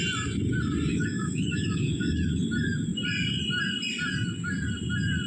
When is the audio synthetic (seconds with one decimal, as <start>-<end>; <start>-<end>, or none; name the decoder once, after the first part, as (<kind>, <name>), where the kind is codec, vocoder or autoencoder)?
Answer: 0.9-2.4 (autoencoder, DAC-VAE)